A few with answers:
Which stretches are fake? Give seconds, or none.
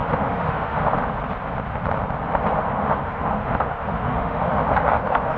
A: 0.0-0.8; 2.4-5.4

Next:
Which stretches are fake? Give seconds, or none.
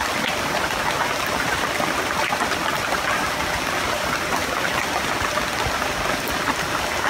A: none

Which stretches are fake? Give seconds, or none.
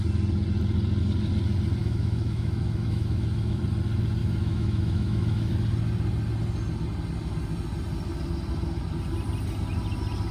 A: 1.8-3.6; 4.2-5.5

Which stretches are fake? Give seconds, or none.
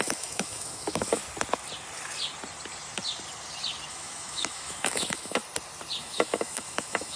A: 0.0-1.2; 3.9-5.4; 6.0-7.2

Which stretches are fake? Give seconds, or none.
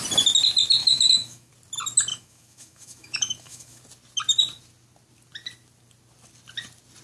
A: 0.8-1.5; 2.1-3.8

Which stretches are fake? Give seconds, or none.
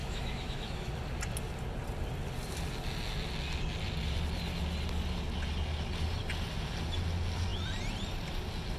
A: 0.0-0.9